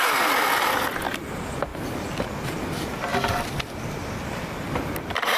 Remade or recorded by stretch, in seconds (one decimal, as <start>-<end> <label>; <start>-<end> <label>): 0.0-5.4 recorded